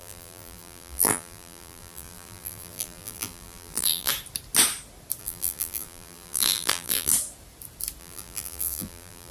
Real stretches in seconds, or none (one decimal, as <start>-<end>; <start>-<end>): 4.1-5.2; 7.1-8.0